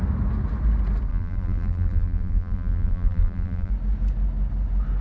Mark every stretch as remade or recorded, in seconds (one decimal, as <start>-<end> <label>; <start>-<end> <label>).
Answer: 0.0-1.1 recorded; 1.1-3.7 remade; 3.7-5.0 recorded